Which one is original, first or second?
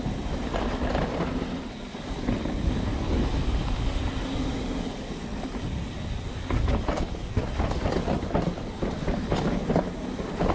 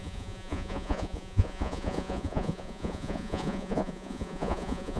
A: first